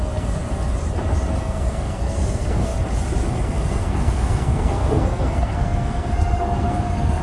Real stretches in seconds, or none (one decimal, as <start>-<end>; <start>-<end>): 0.4-1.4; 2.7-3.3